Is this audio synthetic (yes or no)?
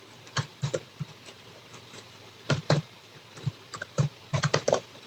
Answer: yes